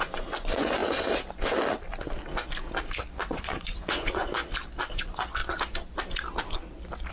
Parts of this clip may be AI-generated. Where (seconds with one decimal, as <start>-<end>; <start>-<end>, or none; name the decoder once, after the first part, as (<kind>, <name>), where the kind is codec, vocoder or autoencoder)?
0.0-0.8 (vocoder, Vocos); 3.1-4.4; 4.9-5.4